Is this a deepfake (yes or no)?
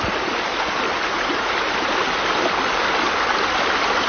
no